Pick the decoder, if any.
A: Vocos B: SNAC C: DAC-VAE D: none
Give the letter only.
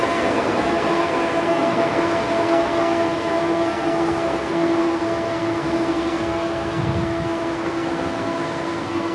B